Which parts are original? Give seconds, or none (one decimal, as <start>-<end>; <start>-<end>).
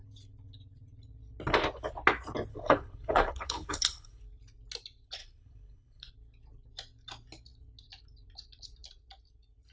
0.0-2.5; 4.2-5.2; 6.1-9.7